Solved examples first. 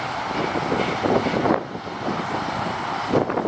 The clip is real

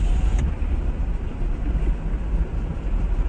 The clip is real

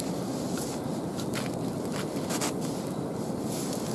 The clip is real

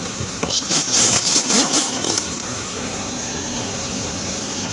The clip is fake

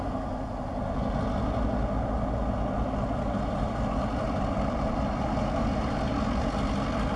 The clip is real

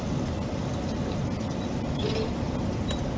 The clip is real